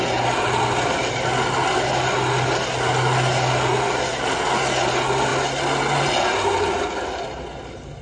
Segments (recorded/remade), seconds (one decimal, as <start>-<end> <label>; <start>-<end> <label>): 0.0-8.0 recorded